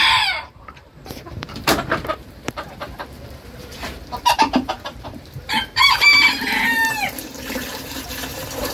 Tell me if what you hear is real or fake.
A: fake